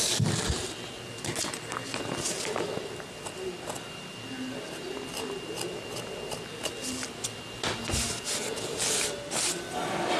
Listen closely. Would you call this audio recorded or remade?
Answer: recorded